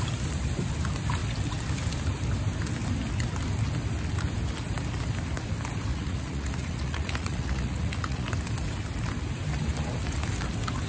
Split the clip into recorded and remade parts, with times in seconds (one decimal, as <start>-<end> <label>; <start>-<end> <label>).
0.0-5.9 recorded; 5.9-8.3 remade; 8.3-10.9 recorded

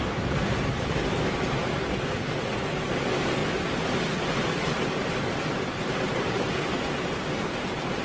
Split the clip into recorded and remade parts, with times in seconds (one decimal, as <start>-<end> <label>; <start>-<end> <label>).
0.0-8.0 recorded

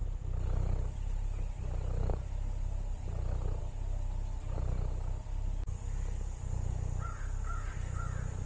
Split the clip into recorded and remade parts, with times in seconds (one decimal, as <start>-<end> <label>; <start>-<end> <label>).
0.0-8.5 recorded

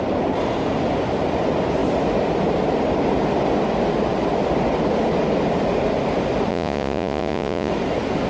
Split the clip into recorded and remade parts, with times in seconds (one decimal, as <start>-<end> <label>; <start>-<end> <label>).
0.0-6.5 recorded; 6.5-7.7 remade; 7.7-8.3 recorded

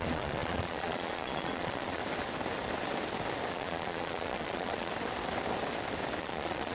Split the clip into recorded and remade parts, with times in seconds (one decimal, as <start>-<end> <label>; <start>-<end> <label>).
0.0-2.0 remade; 2.0-3.5 recorded; 3.5-4.9 remade; 4.9-6.2 recorded; 6.2-6.7 remade

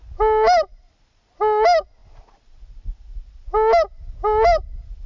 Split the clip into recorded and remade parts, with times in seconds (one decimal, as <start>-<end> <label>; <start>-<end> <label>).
0.0-5.1 recorded

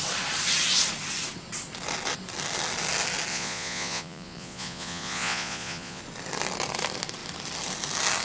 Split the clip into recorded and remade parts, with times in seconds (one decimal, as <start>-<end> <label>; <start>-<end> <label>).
0.0-3.3 recorded; 3.3-6.0 remade; 6.0-8.2 recorded